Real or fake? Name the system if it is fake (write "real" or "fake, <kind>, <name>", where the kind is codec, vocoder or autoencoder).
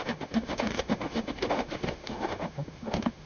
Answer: fake, autoencoder, DAC-VAE